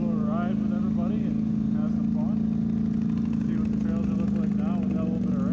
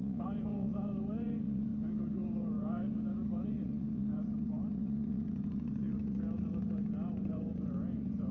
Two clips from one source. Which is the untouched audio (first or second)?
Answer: first